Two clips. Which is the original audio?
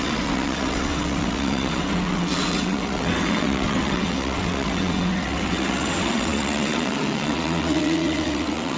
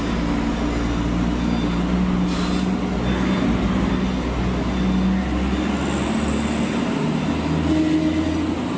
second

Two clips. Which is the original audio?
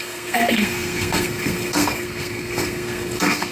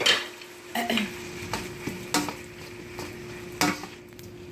second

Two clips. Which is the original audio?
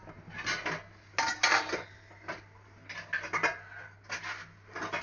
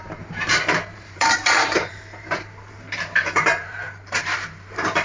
first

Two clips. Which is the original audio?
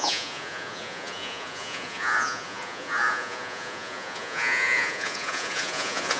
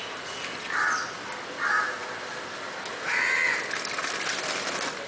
second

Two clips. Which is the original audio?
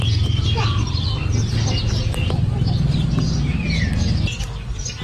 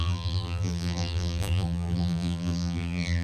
first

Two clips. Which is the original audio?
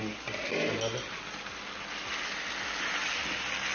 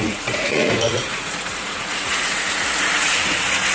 first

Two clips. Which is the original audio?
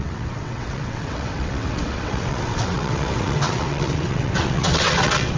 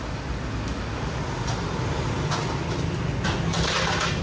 second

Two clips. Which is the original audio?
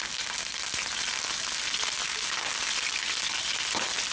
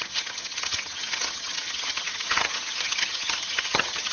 first